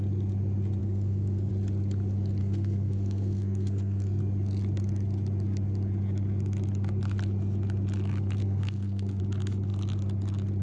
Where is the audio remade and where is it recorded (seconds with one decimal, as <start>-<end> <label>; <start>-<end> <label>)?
0.0-0.8 recorded; 0.8-1.5 remade; 1.5-2.4 recorded; 2.4-4.2 remade; 4.2-8.4 recorded; 8.4-9.2 remade; 9.2-10.6 recorded